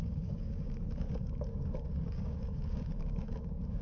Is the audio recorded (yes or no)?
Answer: no